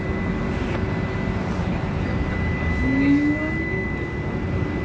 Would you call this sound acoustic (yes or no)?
yes